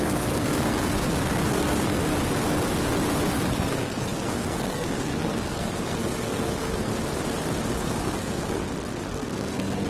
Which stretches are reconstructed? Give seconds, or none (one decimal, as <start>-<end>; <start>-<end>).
0.0-2.0; 3.3-6.9; 7.7-8.6; 9.1-9.9